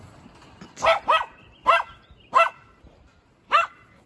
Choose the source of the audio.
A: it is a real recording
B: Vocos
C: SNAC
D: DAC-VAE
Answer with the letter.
A